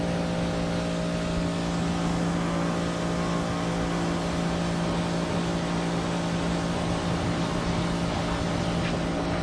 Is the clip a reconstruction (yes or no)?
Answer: no